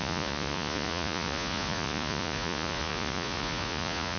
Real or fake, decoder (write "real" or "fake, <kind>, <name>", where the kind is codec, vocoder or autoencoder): fake, vocoder, Vocos